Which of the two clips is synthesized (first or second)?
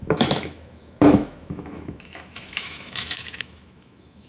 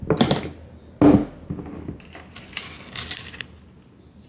first